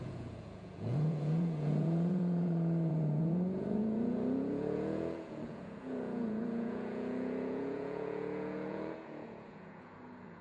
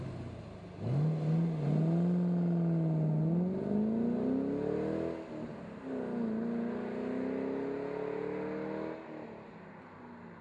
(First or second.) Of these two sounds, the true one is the second